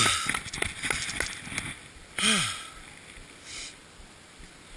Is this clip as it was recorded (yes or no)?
yes